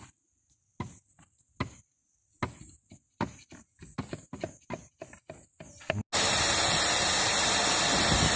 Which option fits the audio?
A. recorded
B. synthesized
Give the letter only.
A